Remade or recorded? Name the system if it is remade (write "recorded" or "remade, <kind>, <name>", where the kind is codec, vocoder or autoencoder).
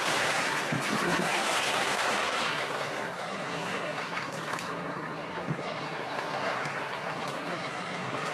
remade, codec, SNAC